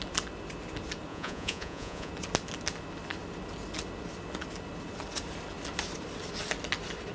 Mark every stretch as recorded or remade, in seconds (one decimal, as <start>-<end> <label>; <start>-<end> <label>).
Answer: 0.0-1.1 recorded; 1.1-2.1 remade; 2.1-7.1 recorded